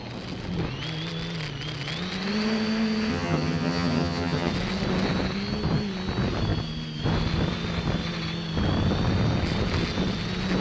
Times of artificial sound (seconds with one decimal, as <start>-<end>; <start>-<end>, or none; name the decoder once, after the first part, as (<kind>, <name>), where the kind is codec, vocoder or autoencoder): 3.1-4.5 (vocoder, HiFi-GAN)